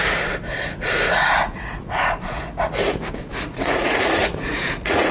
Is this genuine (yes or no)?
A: no